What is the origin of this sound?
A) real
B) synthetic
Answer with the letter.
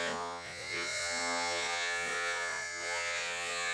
B